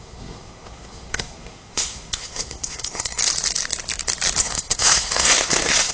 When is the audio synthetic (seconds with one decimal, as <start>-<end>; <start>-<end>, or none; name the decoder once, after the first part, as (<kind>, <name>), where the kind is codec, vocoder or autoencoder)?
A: 0.0-3.2 (codec, SNAC); 4.4-5.9